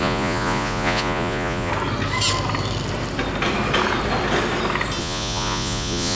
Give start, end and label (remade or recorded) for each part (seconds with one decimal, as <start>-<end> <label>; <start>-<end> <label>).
0.0-1.7 remade; 1.7-5.0 recorded; 5.0-6.1 remade